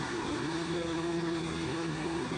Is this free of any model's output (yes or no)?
no